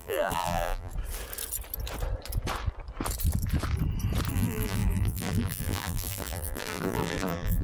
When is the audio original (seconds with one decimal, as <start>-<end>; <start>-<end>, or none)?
0.9-4.3